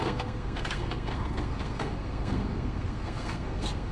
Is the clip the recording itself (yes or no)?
no